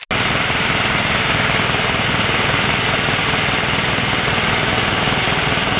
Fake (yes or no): no